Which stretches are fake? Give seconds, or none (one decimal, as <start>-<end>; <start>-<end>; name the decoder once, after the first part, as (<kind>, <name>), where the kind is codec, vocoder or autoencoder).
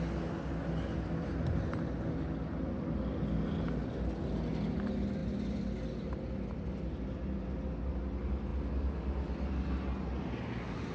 none